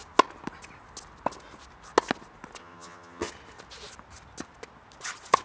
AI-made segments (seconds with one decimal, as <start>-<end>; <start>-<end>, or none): 2.6-3.3